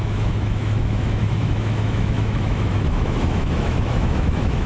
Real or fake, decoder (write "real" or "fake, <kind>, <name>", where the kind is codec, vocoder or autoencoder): fake, autoencoder, DAC-VAE